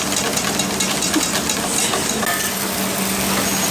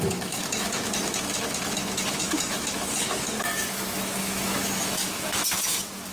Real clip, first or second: first